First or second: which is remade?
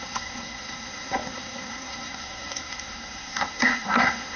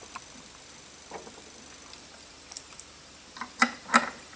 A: first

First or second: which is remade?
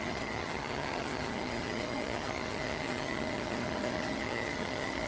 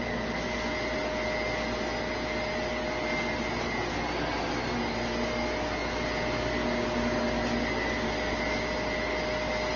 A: first